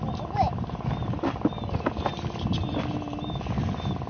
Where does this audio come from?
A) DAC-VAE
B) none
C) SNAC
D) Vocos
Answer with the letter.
B